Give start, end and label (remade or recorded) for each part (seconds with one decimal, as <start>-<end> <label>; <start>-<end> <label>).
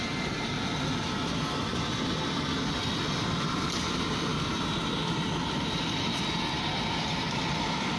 0.0-3.4 recorded; 3.4-4.3 remade; 4.3-5.4 recorded; 5.4-6.1 remade; 6.1-7.1 recorded; 7.1-8.0 remade